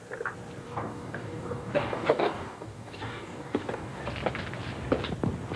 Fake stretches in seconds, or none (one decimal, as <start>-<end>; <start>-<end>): 0.6-4.0